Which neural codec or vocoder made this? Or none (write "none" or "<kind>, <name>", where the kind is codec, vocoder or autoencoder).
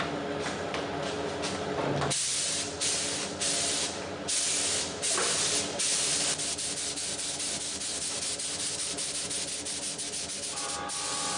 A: none